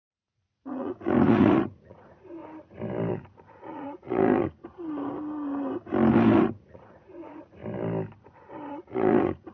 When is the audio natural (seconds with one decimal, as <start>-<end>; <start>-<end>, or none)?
2.4-3.1; 4.6-6.4; 7.6-8.7